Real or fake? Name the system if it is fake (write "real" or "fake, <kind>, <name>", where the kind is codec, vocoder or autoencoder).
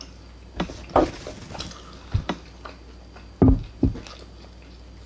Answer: real